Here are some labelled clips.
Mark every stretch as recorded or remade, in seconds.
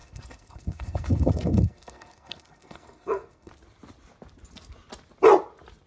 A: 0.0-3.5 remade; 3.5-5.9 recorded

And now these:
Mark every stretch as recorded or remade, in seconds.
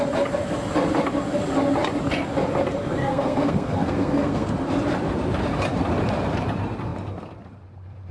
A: 0.0-3.0 recorded; 3.0-4.5 remade; 4.5-8.1 recorded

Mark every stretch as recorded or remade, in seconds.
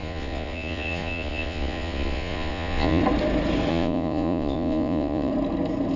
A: 0.0-3.0 remade; 3.0-3.7 recorded; 3.7-5.3 remade; 5.3-6.0 recorded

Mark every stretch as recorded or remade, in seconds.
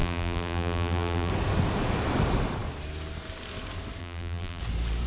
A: 0.0-1.3 remade; 1.3-4.0 recorded; 4.0-4.6 remade; 4.6-5.1 recorded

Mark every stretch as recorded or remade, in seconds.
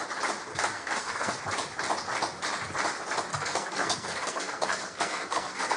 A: 0.0-0.5 recorded; 0.5-1.4 remade; 1.4-3.3 recorded; 3.3-5.8 remade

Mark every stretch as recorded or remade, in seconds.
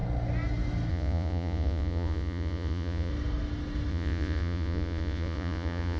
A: 0.0-0.9 recorded; 0.9-3.1 remade; 3.1-3.9 recorded; 3.9-6.0 remade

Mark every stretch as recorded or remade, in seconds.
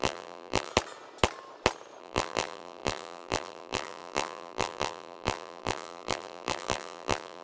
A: 0.0-0.7 remade; 0.7-2.0 recorded; 2.0-7.4 remade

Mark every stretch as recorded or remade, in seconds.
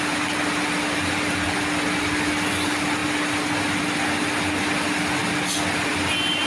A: 0.0-6.5 recorded